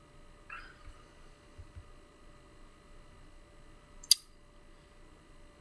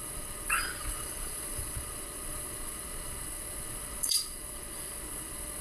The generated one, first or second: second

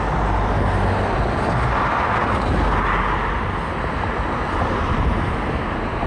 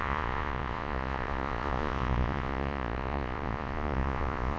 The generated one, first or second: second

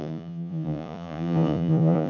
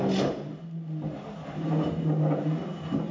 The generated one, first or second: first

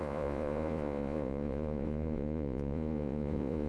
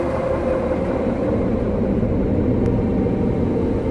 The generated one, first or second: first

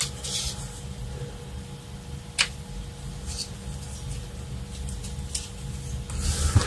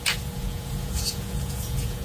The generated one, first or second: second